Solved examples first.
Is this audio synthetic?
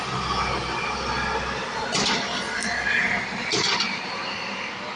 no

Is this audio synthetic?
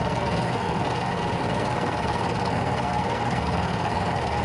yes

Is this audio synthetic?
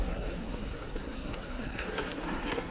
yes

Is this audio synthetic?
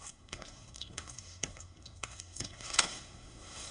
yes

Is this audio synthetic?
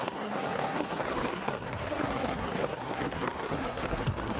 yes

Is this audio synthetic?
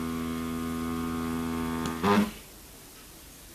no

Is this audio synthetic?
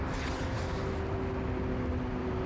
no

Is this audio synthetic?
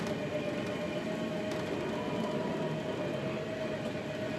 no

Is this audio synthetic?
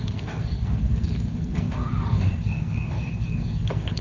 yes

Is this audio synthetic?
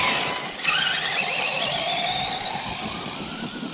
no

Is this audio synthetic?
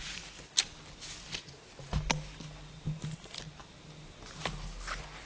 no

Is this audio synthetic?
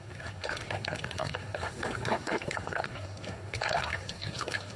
yes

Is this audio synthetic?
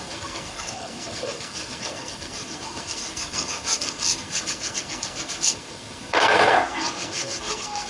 yes